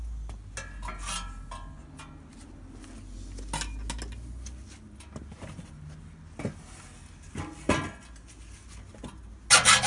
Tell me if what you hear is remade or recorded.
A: recorded